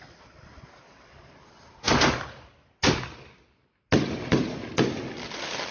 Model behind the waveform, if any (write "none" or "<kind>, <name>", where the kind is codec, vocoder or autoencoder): none